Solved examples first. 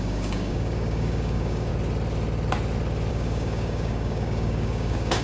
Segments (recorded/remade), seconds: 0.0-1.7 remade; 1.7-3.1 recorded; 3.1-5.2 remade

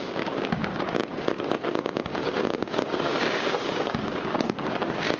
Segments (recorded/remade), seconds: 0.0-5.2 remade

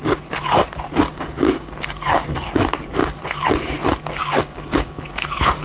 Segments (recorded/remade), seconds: 0.0-1.1 recorded; 1.1-1.7 remade; 1.7-4.2 recorded; 4.2-5.0 remade; 5.0-5.6 recorded